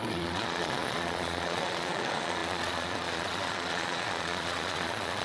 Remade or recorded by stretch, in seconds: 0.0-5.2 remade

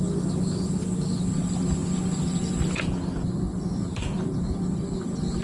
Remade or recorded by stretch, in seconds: 0.0-5.4 recorded

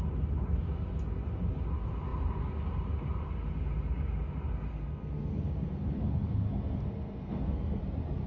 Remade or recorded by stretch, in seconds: 0.0-4.7 recorded; 4.7-7.8 remade; 7.8-8.3 recorded

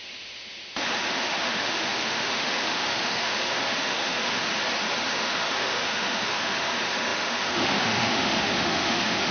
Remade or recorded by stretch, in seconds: 0.0-4.5 remade; 4.5-5.0 recorded; 5.0-9.3 remade